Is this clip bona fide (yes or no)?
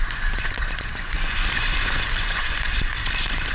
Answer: no